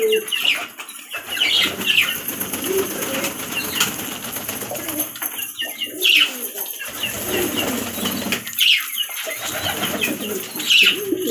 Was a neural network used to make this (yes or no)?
no